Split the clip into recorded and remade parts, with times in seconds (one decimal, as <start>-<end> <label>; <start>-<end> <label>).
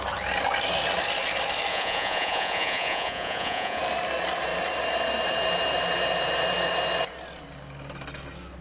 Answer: 0.0-1.7 recorded; 1.7-3.8 remade; 3.8-8.6 recorded